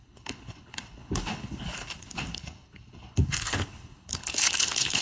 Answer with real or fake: fake